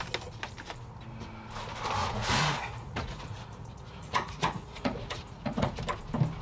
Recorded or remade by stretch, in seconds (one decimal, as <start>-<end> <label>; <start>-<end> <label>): 0.0-2.0 recorded; 2.0-5.8 remade; 5.8-6.4 recorded